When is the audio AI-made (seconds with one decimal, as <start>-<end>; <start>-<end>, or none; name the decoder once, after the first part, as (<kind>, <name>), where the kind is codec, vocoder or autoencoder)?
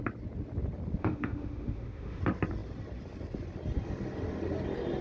1.0-2.2 (autoencoder, DAC-VAE)